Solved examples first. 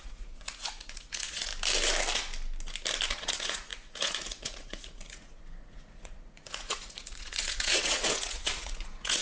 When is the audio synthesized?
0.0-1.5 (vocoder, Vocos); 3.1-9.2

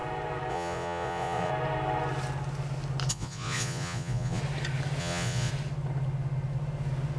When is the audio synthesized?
0.5-1.5 (vocoder, Vocos); 3.1-4.4; 5.0-5.5